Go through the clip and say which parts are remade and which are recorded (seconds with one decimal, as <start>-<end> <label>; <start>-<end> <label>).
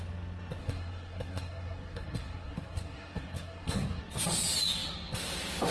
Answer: 0.0-0.6 recorded; 0.6-4.0 remade; 4.0-5.7 recorded